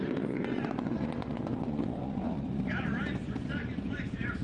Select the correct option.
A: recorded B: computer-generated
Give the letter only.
B